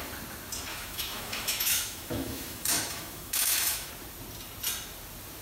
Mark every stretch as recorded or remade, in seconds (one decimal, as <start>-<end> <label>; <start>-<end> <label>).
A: 0.0-0.7 recorded; 0.7-3.9 remade; 3.9-5.4 recorded